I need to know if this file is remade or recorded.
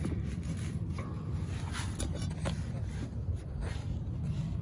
recorded